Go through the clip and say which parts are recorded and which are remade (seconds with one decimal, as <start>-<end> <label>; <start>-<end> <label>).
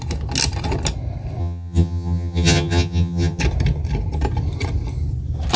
0.0-1.4 recorded; 1.4-3.4 remade; 3.4-5.6 recorded